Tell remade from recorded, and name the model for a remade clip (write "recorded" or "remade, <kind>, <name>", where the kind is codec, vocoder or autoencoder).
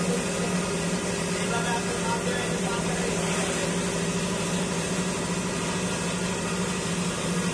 recorded